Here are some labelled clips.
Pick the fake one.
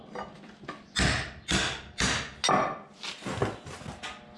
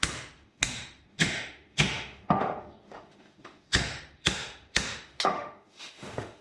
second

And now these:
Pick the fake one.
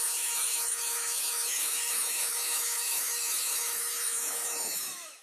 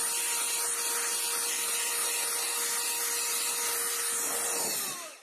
first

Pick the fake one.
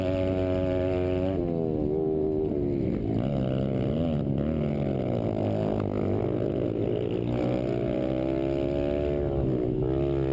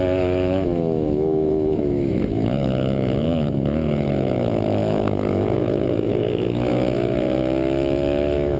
second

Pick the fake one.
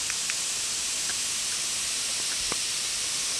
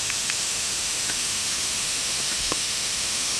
second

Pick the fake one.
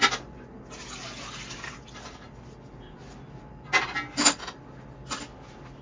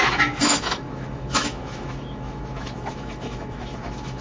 second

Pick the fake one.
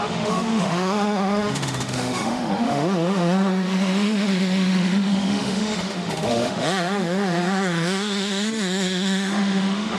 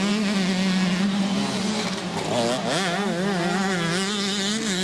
first